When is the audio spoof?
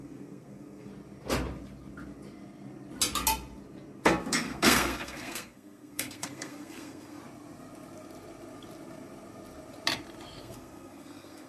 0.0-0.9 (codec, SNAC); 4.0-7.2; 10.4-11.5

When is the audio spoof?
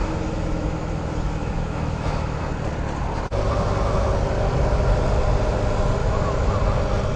0.0-2.4 (autoencoder, DAC-VAE); 6.0-6.5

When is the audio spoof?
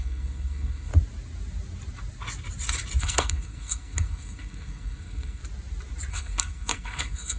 0.0-0.9 (codec, SNAC); 3.0-5.4; 6.1-7.4